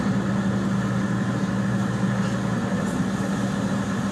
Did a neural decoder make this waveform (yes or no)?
no